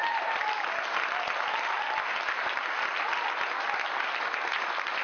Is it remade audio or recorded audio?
recorded